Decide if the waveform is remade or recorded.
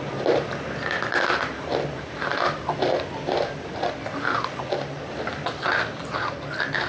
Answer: remade